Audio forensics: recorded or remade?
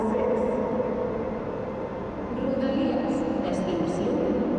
recorded